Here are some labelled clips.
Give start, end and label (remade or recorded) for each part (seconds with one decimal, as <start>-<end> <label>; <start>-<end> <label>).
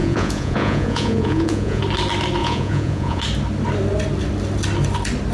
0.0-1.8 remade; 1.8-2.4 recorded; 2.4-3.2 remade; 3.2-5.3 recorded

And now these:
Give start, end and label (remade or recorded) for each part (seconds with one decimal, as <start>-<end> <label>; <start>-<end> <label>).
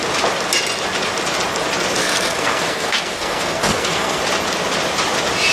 0.0-2.0 recorded; 2.0-4.2 remade; 4.2-5.5 recorded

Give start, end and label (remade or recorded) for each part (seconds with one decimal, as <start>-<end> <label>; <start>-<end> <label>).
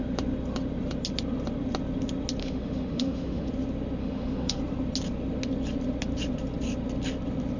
0.0-2.4 recorded; 2.4-3.5 remade; 3.5-4.0 recorded; 4.0-4.6 remade; 4.6-7.6 recorded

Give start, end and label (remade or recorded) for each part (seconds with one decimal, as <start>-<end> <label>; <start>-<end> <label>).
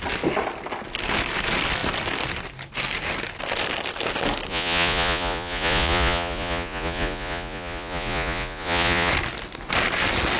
0.0-4.5 recorded; 4.5-9.1 remade; 9.1-10.4 recorded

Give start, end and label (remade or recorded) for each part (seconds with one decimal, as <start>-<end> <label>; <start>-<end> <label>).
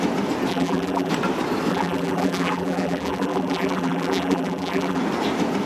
0.0-0.5 recorded; 0.5-1.1 remade; 1.1-1.7 recorded; 1.7-5.0 remade; 5.0-5.7 recorded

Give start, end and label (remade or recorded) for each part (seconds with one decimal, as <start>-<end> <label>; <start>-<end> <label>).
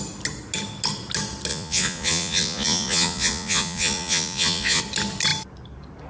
0.0-1.5 recorded; 1.5-4.8 remade; 4.8-6.1 recorded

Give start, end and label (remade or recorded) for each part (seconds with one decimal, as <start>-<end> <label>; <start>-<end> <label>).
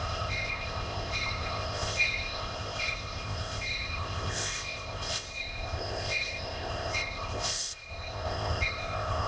0.0-9.3 remade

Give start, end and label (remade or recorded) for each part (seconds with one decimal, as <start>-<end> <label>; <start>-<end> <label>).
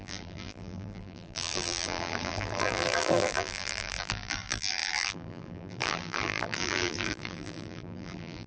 0.0-8.5 remade